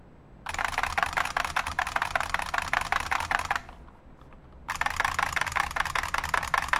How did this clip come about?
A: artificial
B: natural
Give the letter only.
B